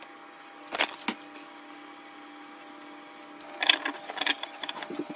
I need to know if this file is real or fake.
real